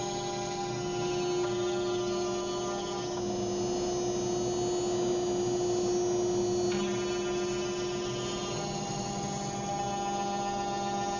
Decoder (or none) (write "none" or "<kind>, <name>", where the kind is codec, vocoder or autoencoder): none